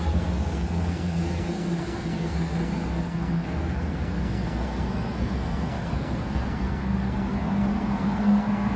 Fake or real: fake